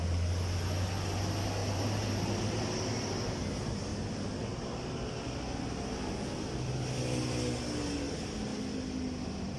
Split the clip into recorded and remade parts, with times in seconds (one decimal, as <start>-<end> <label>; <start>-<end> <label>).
0.0-1.6 recorded; 1.6-2.6 remade; 2.6-9.6 recorded